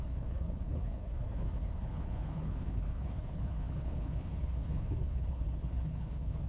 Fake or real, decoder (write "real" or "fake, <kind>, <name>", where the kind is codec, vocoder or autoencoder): fake, codec, HILCodec